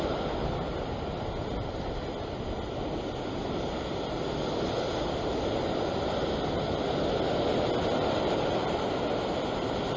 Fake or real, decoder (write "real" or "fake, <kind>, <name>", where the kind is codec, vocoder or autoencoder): real